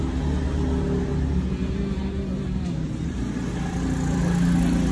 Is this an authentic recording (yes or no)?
yes